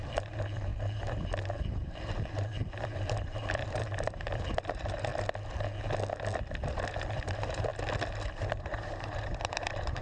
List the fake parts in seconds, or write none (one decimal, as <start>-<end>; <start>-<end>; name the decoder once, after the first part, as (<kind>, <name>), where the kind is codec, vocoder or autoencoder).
0.0-5.1 (vocoder, BigVGAN v2); 7.1-7.7; 8.6-10.0